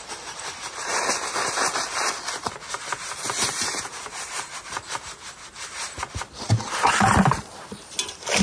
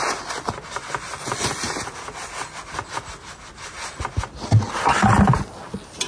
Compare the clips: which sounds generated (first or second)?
first